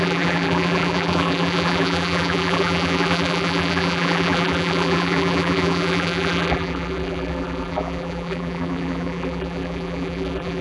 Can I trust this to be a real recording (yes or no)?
no